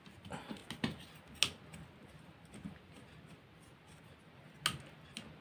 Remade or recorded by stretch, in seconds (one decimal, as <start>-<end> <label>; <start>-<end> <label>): 0.0-5.4 recorded